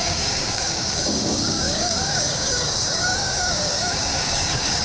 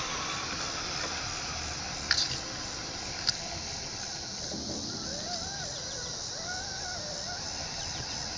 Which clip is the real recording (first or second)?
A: second